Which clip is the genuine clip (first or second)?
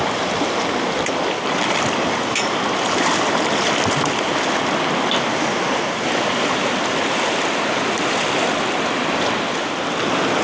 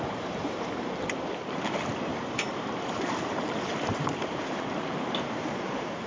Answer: first